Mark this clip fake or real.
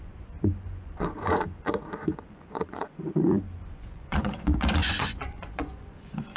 fake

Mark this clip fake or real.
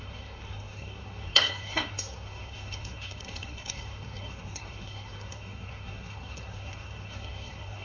fake